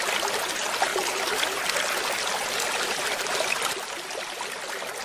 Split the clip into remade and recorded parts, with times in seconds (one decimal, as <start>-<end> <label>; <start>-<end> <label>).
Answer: 0.0-5.0 recorded